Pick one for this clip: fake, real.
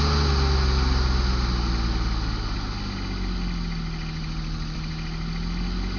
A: real